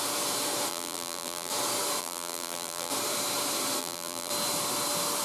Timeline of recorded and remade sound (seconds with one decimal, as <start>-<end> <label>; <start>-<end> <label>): 0.0-0.7 recorded; 0.7-1.5 remade; 1.5-2.0 recorded; 2.0-2.9 remade; 2.9-3.8 recorded; 3.8-4.3 remade; 4.3-5.2 recorded